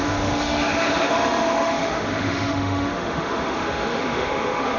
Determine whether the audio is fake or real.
fake